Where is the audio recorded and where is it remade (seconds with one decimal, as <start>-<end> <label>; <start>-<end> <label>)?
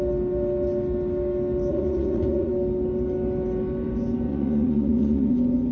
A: 0.0-1.7 recorded; 1.7-2.5 remade; 2.5-4.3 recorded; 4.3-5.3 remade; 5.3-5.7 recorded